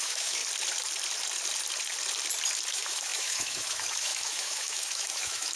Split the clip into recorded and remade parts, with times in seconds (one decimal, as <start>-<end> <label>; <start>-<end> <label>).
0.0-0.4 remade; 0.4-2.7 recorded; 2.7-5.6 remade